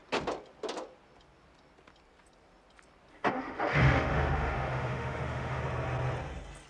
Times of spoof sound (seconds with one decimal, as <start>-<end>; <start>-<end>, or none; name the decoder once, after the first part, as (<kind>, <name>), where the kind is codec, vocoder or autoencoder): 3.1-5.6 (autoencoder, DAC-VAE)